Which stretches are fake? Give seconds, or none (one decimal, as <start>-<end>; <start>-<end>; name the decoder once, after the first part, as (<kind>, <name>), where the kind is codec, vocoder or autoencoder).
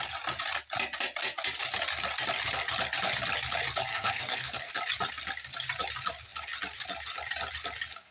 3.9-4.7 (codec, SNAC)